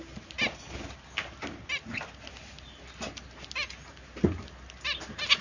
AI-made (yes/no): no